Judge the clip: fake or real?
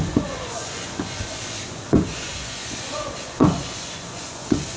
fake